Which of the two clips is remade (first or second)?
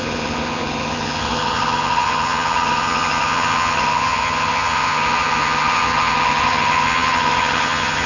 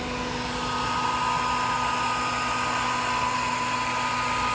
first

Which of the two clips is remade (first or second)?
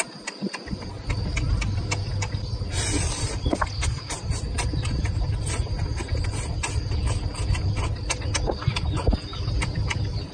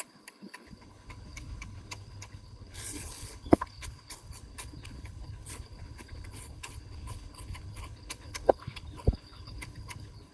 second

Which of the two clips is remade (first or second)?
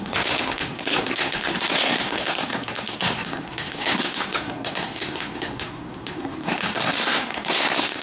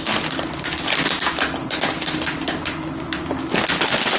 first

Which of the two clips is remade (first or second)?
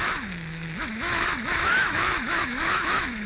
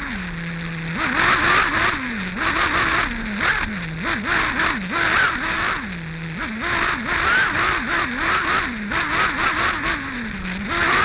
first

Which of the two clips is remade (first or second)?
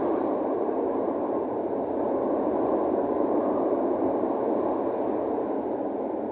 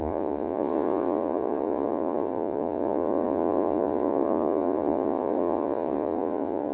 second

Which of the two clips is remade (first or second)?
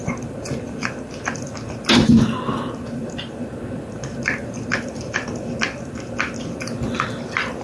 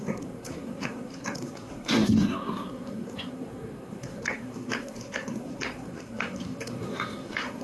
second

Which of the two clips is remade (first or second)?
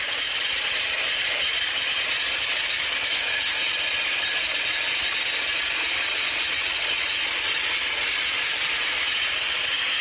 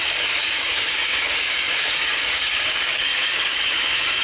second